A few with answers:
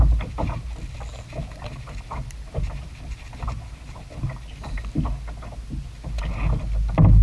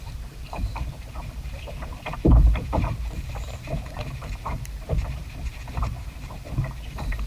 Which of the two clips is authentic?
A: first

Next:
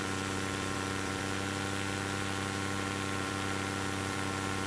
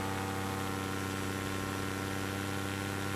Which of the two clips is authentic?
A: second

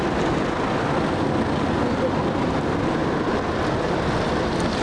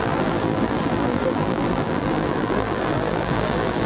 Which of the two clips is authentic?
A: first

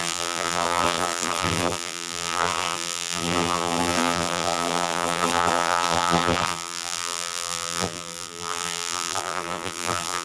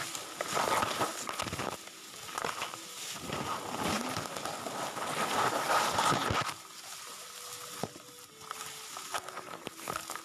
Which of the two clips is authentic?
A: second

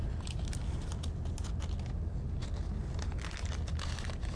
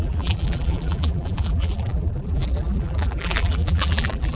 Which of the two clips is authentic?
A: first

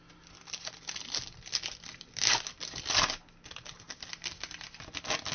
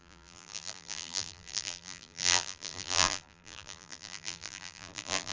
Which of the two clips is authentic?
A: first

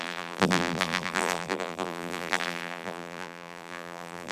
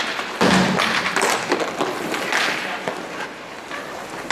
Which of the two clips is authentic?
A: second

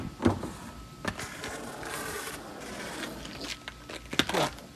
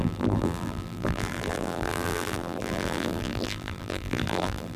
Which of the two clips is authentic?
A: first